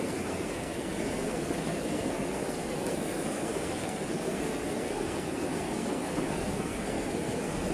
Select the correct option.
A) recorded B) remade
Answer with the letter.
B